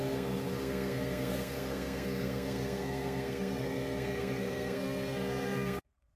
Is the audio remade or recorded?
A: remade